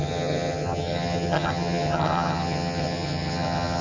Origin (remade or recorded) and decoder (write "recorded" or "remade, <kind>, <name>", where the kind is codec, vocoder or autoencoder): remade, vocoder, HiFi-GAN